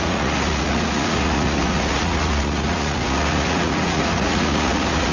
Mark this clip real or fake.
fake